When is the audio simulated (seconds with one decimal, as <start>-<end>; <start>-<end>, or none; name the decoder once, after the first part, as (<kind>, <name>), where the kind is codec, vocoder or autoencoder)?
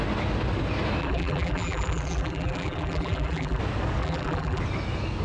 1.0-3.6 (vocoder, BigVGAN v2); 4.0-4.6